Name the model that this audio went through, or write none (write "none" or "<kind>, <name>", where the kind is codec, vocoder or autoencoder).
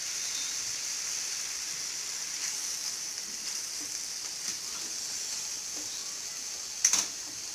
none